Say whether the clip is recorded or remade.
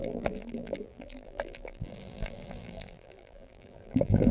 remade